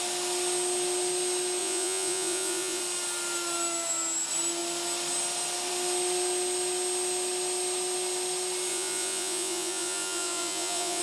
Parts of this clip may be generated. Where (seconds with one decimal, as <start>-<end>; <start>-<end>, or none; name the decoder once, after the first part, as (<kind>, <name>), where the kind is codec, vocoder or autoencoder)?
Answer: 1.6-2.8 (vocoder, Vocos); 8.7-11.0